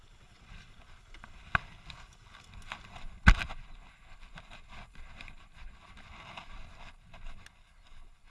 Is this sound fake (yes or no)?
no